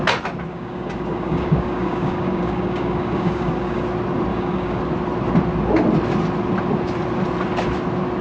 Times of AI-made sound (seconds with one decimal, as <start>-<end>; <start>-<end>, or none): 0.5-3.8; 4.3-4.8